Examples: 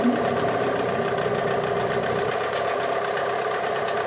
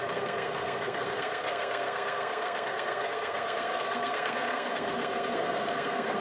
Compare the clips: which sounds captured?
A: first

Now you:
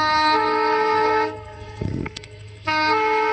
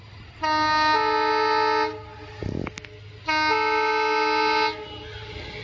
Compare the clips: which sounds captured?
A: second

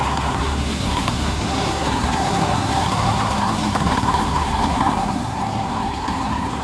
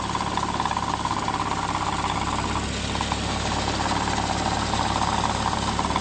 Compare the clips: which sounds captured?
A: second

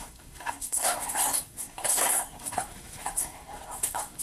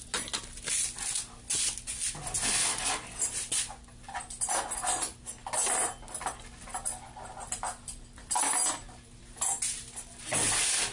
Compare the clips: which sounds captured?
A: second